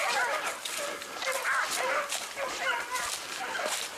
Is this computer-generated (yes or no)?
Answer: no